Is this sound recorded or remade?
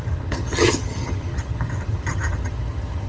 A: remade